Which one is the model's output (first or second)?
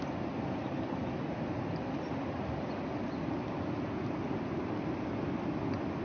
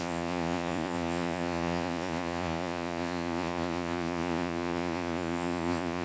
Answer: second